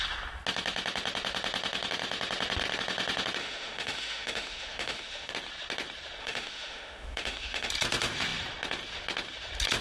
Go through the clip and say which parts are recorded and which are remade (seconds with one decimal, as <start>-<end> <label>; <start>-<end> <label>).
0.0-3.4 recorded; 3.4-5.3 remade; 5.3-6.2 recorded; 6.2-7.7 remade; 7.7-9.8 recorded